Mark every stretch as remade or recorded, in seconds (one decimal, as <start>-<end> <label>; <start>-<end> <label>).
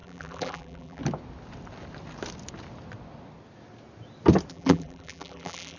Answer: 0.0-1.0 remade; 1.0-4.5 recorded; 4.5-5.8 remade